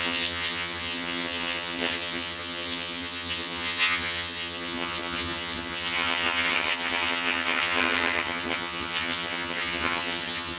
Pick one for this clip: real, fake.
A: fake